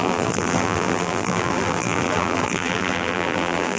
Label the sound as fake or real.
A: fake